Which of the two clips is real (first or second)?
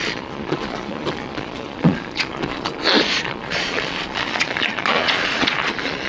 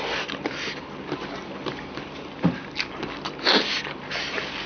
second